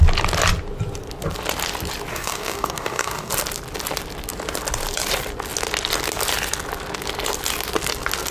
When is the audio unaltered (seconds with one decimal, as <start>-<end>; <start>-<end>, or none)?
0.0-2.1; 3.3-8.3